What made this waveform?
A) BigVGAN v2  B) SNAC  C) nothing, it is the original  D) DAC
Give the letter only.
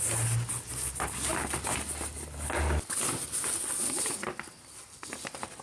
C